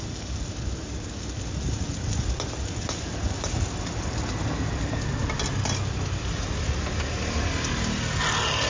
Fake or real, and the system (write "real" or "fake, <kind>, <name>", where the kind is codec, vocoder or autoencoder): real